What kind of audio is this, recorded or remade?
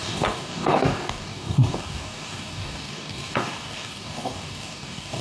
remade